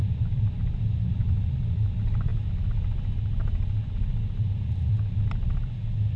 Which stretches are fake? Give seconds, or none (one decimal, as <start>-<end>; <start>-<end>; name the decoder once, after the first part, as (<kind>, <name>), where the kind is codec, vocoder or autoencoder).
none